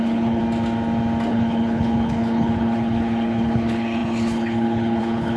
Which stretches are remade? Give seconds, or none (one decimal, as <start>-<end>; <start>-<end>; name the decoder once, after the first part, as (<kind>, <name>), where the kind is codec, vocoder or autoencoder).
0.0-0.4 (codec, HILCodec); 1.3-5.4